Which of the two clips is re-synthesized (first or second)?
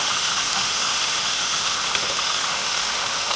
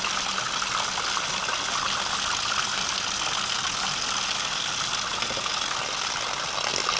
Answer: first